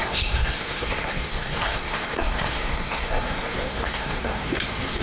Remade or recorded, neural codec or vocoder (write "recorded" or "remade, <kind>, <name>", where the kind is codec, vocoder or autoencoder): remade, codec, SNAC